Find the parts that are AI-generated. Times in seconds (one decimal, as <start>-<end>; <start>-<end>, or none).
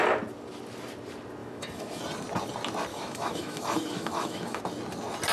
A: 1.4-2.0; 2.9-4.6